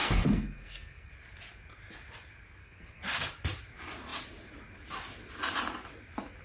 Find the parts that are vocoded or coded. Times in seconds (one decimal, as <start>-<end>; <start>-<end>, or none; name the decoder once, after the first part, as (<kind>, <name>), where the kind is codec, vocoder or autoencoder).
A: 0.0-1.1 (codec, SNAC); 2.6-3.3